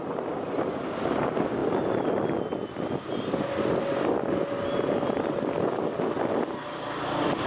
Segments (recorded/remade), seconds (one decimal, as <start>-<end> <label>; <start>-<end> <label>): 0.0-7.5 recorded